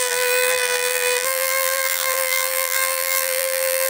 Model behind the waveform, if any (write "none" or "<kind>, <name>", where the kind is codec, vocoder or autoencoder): vocoder, BigVGAN v2